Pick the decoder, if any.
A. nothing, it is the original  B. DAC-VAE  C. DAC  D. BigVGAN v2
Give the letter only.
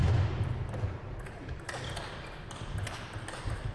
A